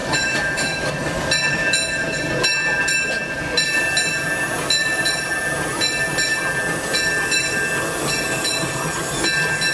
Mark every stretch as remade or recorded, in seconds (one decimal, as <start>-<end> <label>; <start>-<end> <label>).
0.0-0.9 remade; 0.9-9.7 recorded